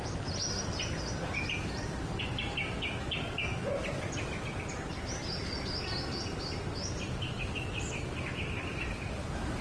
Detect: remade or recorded recorded